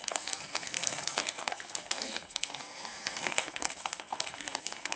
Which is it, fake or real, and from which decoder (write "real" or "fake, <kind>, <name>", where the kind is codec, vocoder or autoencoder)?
fake, codec, SNAC